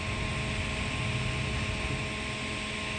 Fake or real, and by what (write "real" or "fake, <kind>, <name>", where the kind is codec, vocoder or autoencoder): real